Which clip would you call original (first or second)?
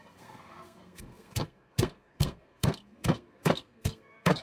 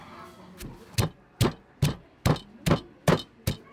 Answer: second